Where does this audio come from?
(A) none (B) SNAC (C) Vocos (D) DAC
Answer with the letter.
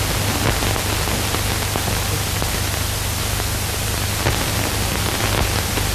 A